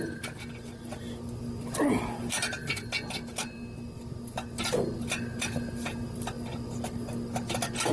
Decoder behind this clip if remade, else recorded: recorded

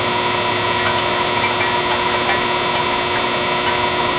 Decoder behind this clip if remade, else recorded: recorded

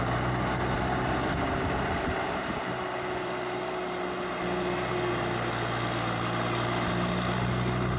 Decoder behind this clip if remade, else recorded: recorded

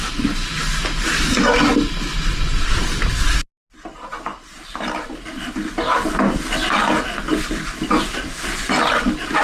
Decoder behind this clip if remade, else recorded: recorded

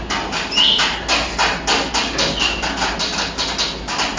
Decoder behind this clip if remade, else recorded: recorded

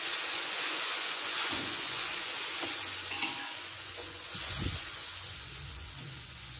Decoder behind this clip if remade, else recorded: remade, vocoder, Vocos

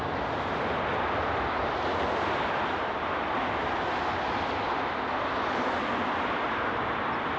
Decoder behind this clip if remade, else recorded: recorded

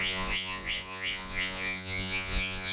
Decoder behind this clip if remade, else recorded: remade, vocoder, Vocos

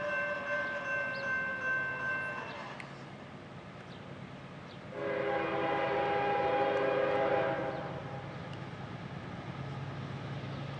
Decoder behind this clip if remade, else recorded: recorded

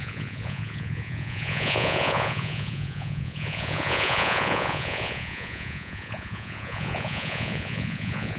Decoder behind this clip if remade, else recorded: remade, vocoder, Vocos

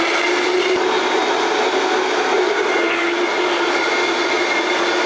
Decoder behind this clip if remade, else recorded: recorded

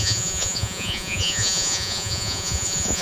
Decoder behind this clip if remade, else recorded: remade, vocoder, Vocos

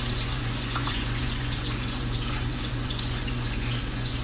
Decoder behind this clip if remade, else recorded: remade, vocoder, Vocos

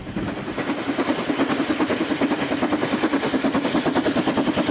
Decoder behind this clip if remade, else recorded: recorded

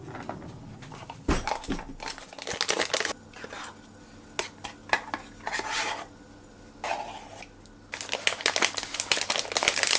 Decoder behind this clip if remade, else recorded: recorded